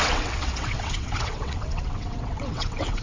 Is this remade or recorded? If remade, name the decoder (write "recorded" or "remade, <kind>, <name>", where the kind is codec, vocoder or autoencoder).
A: remade, vocoder, WaveNeXt